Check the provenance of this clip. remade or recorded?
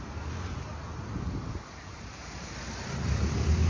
recorded